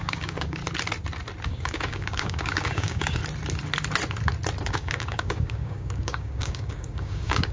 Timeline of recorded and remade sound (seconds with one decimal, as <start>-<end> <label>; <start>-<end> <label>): 0.0-0.6 remade; 0.6-1.5 recorded; 1.5-3.2 remade; 3.2-4.7 recorded; 4.7-7.5 remade